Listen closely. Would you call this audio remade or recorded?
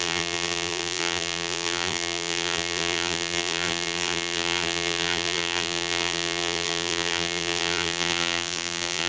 remade